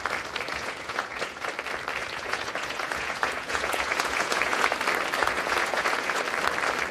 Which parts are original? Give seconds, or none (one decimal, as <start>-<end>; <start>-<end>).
0.0-0.5; 1.5-2.0; 4.7-5.2; 6.2-6.9

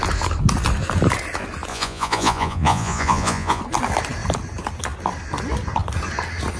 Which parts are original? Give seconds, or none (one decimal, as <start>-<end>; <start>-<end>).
0.0-1.7; 3.6-6.6

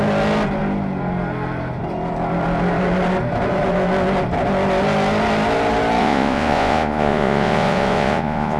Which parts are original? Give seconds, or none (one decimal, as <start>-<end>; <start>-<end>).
0.0-6.0

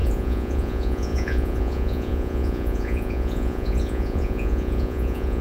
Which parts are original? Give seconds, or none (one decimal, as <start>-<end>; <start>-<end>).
none

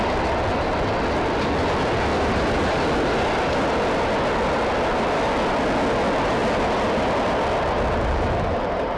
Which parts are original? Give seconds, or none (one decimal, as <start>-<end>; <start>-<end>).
0.0-9.0

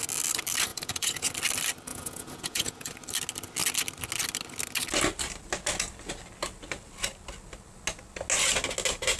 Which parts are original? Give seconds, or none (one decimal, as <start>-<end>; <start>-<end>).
0.0-0.7; 1.3-1.9; 2.9-9.2

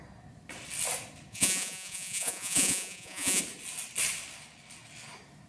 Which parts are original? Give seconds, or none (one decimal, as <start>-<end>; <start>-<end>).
0.0-1.3; 3.4-5.5